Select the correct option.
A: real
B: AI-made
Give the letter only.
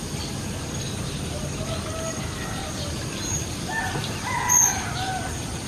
B